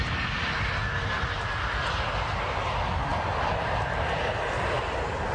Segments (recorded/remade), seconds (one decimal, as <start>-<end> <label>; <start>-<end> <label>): 0.0-3.1 recorded; 3.1-5.3 remade